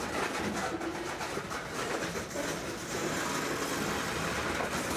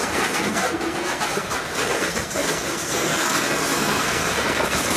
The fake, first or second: second